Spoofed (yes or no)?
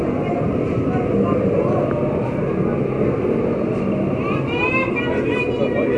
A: no